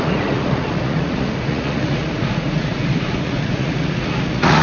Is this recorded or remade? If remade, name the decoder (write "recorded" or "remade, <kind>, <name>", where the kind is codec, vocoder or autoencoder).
remade, vocoder, Vocos